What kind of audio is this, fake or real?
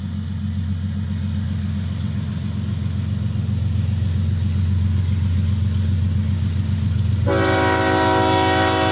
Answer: real